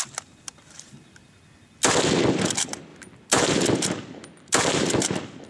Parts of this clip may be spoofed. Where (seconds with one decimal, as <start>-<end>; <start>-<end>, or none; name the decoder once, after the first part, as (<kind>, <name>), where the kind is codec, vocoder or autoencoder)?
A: 0.0-1.2 (vocoder, BigVGAN v2); 2.4-5.5